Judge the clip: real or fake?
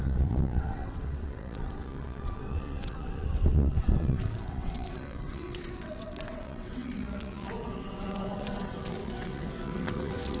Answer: fake